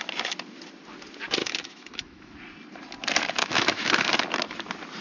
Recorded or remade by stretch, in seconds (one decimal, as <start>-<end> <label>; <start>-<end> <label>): 0.0-1.4 recorded; 1.4-2.3 remade; 2.3-3.4 recorded; 3.4-4.1 remade; 4.1-5.0 recorded